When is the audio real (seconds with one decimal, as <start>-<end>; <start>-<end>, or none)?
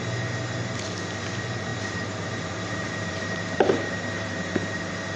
0.0-1.7; 4.8-5.2